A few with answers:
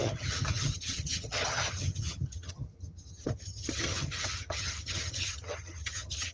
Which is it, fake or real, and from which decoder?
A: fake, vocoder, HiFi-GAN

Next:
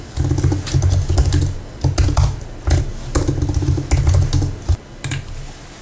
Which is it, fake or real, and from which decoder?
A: real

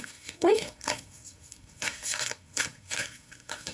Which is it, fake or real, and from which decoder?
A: fake, codec, SNAC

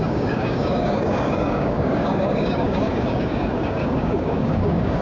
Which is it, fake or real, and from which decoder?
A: fake, codec, DAC